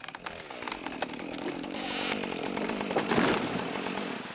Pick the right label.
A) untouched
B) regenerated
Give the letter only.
A